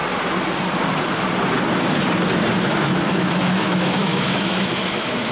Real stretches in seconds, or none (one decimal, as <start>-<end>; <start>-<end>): 0.0-2.8